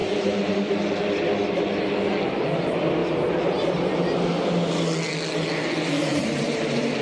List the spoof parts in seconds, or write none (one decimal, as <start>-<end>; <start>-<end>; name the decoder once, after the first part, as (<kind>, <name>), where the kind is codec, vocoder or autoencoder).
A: 0.0-0.5 (vocoder, BigVGAN v2); 6.1-7.0

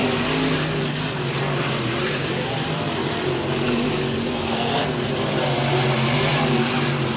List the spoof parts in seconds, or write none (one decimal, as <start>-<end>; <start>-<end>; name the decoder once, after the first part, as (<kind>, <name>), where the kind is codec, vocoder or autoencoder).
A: 4.3-5.1 (codec, SNAC)

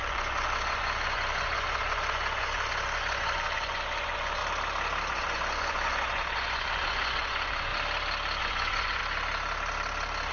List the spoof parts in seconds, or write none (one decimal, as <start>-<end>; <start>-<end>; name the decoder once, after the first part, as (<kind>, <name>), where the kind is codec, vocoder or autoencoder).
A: 0.0-4.4 (vocoder, Vocos); 5.1-7.7; 8.4-9.0

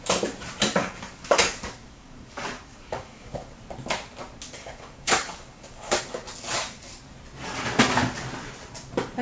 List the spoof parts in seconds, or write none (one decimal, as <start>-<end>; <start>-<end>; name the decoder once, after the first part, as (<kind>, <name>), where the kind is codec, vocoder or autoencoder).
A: 0.8-3.6 (codec, DAC); 4.6-6.0

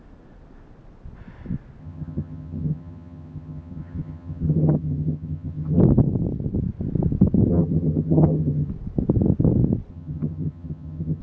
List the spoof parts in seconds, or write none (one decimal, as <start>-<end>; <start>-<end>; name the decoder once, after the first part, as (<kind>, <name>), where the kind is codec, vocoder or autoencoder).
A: 1.8-5.8 (vocoder, HiFi-GAN); 7.5-8.7; 9.9-11.2

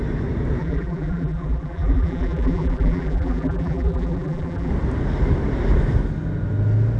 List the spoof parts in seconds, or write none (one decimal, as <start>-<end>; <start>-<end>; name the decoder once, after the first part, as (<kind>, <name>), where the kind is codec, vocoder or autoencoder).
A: 0.6-4.7 (vocoder, BigVGAN v2)

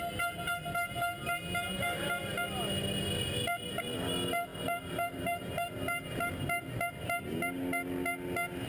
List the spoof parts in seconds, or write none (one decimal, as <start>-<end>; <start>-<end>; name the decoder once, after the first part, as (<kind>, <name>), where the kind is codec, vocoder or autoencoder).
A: none